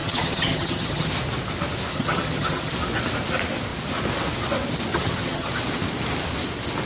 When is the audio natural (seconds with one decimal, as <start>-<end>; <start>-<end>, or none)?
1.1-1.9; 2.7-4.9; 5.5-6.9